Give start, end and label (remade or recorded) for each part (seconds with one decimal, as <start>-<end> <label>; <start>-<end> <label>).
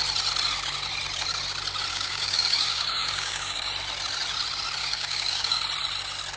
0.0-1.9 recorded; 1.9-3.7 remade; 3.7-4.8 recorded; 4.8-5.6 remade; 5.6-6.4 recorded